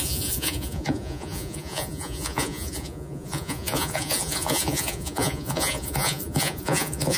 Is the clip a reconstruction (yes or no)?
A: yes